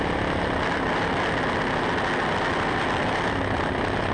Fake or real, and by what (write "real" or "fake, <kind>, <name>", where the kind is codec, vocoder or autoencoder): real